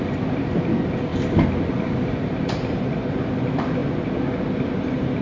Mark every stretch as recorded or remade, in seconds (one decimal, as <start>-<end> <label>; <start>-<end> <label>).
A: 0.0-1.1 recorded; 1.1-3.2 remade; 3.2-5.2 recorded